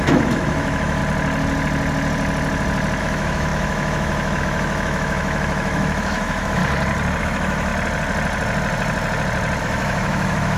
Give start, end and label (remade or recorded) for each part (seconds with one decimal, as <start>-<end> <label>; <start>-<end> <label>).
0.0-1.0 remade; 1.0-3.0 recorded; 3.0-6.6 remade; 6.6-7.2 recorded; 7.2-7.7 remade; 7.7-9.6 recorded; 9.6-10.6 remade